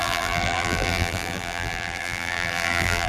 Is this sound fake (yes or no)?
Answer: yes